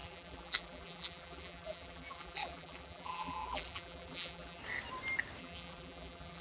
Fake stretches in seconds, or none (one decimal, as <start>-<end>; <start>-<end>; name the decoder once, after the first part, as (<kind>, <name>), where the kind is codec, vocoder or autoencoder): 0.0-4.6 (vocoder, BigVGAN v2); 5.4-6.4